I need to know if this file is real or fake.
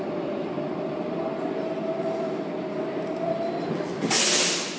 real